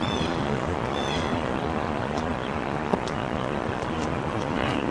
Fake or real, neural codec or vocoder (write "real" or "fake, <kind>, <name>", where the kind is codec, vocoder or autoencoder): fake, vocoder, Vocos